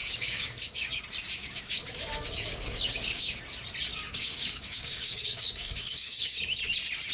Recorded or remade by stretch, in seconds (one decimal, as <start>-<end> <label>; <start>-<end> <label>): 0.0-1.0 remade; 1.0-1.4 recorded; 1.4-3.4 remade; 3.4-3.9 recorded; 3.9-6.4 remade; 6.4-7.1 recorded